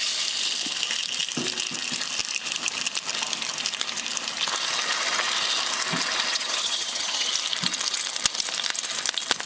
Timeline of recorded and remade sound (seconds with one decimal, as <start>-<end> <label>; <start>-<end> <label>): 0.0-6.3 recorded; 6.3-7.3 remade; 7.3-9.5 recorded